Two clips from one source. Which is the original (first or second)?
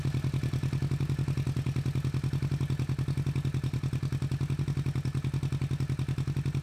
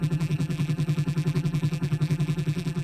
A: first